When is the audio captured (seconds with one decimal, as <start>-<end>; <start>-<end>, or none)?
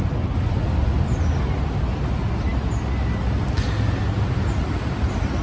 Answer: 0.0-5.4